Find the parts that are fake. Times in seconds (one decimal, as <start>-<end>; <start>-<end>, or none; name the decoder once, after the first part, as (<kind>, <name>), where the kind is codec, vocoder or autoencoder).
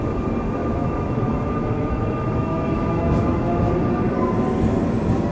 0.6-3.8 (autoencoder, DAC-VAE)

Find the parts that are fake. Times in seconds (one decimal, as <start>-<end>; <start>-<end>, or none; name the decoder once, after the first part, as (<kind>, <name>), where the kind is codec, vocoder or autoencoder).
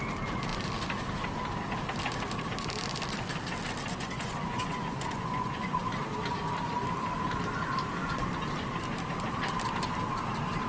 3.9-5.8 (vocoder, Vocos)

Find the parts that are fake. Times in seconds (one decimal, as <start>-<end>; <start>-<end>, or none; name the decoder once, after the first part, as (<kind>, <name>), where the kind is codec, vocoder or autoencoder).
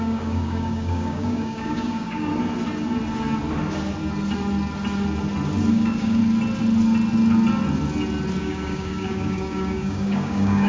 0.0-2.3 (codec, DAC); 5.7-6.2; 8.4-10.7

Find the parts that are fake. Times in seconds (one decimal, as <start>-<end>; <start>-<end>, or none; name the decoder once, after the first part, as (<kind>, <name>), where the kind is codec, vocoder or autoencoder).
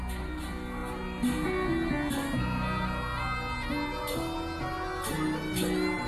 none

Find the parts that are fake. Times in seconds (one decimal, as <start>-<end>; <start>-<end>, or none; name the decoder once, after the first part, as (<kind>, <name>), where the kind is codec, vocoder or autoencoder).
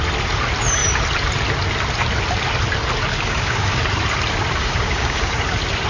3.1-3.8 (codec, DAC); 4.6-5.3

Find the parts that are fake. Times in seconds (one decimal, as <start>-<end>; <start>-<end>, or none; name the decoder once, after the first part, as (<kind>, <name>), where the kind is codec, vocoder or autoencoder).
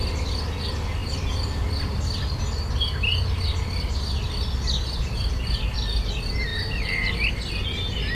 none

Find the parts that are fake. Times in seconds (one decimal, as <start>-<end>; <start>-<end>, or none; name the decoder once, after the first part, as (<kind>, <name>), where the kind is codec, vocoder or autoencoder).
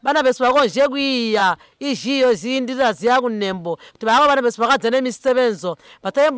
none